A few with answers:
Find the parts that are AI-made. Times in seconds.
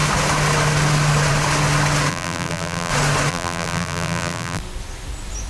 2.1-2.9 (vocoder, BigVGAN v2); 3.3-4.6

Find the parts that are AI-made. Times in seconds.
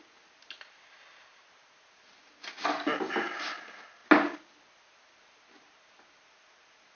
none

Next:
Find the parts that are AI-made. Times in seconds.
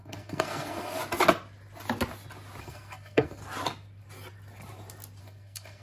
0.0-1.0 (codec, SNAC); 2.6-3.4; 5.2-5.8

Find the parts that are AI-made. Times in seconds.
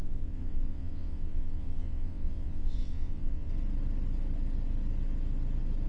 0.0-3.5 (vocoder, WaveNeXt)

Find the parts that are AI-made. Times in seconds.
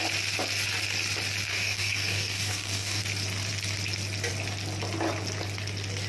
1.5-3.0 (codec, DAC)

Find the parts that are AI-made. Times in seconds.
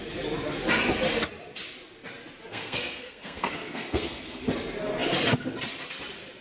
2.5-4.4 (codec, SNAC)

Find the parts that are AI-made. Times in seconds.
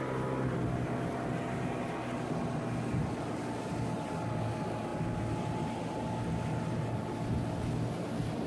none